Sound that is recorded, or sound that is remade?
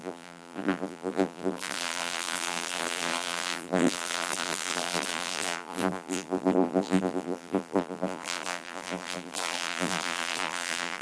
remade